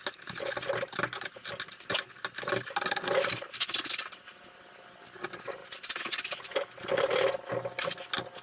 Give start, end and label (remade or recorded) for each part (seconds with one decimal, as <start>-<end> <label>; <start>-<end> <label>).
0.0-8.4 recorded